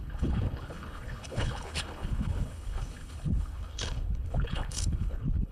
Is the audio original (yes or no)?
no